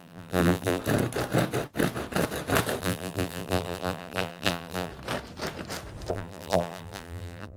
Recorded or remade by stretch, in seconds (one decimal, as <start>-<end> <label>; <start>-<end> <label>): 0.0-0.8 remade; 0.8-2.8 recorded; 2.8-4.9 remade; 4.9-6.1 recorded; 6.1-7.6 remade